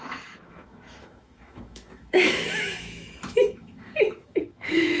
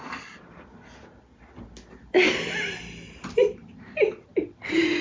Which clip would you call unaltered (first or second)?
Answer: second